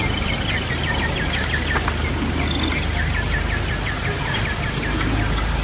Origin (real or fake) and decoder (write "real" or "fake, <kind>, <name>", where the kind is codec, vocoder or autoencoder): real